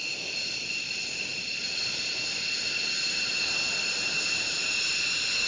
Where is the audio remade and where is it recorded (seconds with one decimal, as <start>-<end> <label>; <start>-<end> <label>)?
0.0-5.5 recorded